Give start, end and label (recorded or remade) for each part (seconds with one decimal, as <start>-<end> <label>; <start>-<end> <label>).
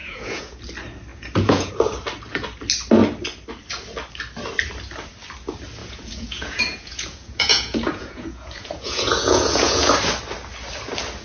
0.0-0.6 remade; 0.6-1.1 recorded; 1.1-1.7 remade; 1.7-5.8 recorded; 5.8-9.9 remade; 9.9-11.2 recorded